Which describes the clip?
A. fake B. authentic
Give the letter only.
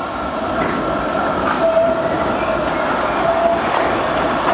B